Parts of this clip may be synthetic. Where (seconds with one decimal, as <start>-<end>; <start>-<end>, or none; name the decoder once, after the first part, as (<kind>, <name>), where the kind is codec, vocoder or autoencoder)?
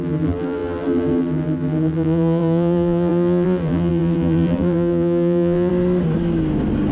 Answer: 0.0-5.7 (vocoder, BigVGAN v2)